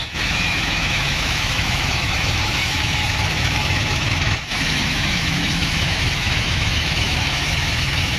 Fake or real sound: fake